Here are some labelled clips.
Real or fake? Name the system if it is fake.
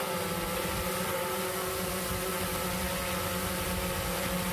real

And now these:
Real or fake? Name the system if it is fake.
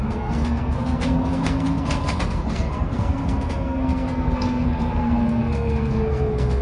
fake, codec, SNAC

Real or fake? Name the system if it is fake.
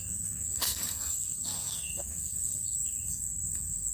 fake, codec, SNAC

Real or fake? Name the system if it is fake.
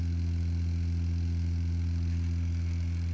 real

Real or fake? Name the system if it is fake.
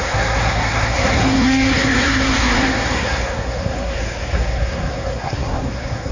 fake, codec, SNAC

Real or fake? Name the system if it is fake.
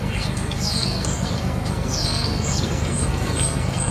fake, codec, SNAC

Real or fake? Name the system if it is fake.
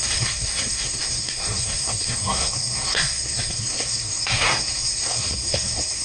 fake, codec, SNAC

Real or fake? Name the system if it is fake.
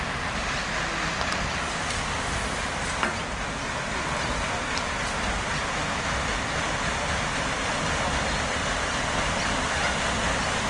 real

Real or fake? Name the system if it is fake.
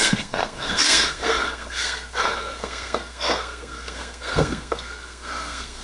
fake, codec, SNAC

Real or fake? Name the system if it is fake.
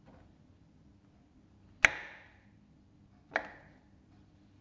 real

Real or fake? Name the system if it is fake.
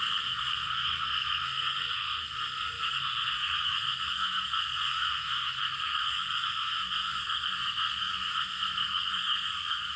fake, codec, SNAC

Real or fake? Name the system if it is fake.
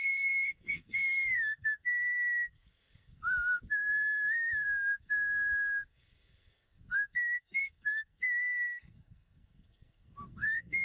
fake, codec, SNAC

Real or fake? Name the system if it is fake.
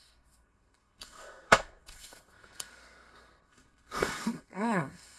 fake, codec, SNAC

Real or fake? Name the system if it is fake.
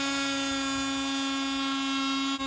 real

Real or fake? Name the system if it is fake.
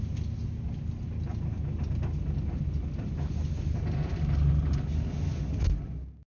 real